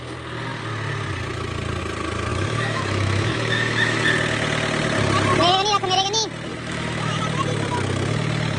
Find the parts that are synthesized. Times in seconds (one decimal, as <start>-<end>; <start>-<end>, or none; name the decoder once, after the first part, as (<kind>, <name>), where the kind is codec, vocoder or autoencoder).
2.3-4.0 (autoencoder, DAC-VAE); 6.5-7.2